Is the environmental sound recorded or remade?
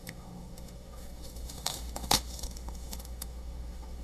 remade